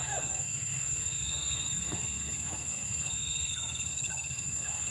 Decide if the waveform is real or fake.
fake